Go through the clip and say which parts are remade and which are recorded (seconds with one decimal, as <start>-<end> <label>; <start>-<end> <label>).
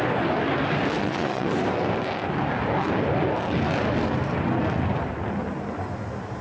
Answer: 0.0-1.0 recorded; 1.0-1.5 remade; 1.5-6.4 recorded